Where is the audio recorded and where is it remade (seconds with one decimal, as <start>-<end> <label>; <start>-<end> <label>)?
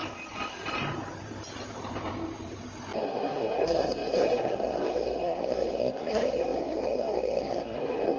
0.0-3.0 recorded; 3.0-8.2 remade